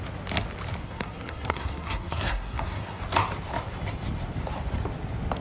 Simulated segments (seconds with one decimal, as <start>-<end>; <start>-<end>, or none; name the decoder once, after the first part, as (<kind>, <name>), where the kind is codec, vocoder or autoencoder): 0.8-3.0 (codec, SNAC)